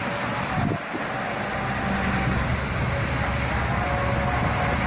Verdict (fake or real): real